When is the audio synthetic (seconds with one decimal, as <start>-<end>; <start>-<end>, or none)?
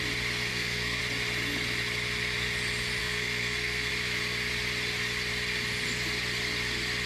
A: 0.5-1.0; 3.0-3.9